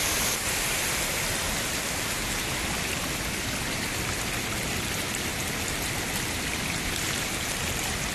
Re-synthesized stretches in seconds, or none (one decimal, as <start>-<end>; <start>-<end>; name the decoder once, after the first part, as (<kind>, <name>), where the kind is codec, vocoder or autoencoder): none